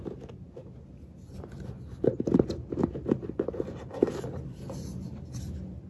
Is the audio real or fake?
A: real